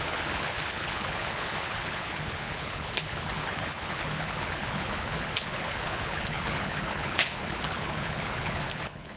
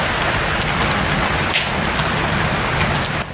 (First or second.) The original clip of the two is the second